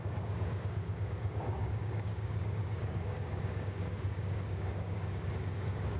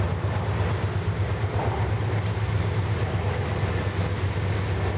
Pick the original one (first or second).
second